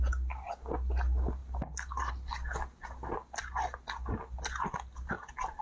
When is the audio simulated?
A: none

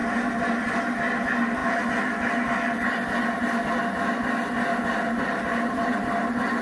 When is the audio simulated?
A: 4.7-6.6 (vocoder, BigVGAN v2)

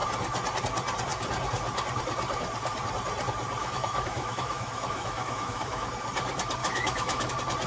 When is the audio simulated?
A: 3.6-5.9 (autoencoder, DAC-VAE); 6.6-7.3